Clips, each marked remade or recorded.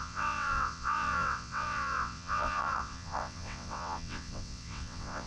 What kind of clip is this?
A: remade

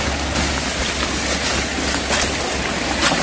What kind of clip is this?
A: recorded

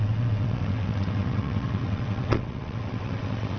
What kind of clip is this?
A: remade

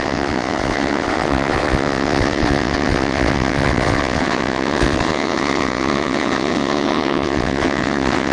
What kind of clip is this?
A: remade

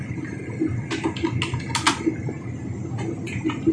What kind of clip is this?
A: recorded